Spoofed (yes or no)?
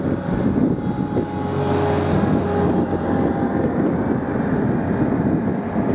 no